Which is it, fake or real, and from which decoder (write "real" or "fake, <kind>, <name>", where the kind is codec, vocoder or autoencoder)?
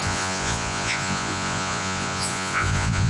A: fake, vocoder, Vocos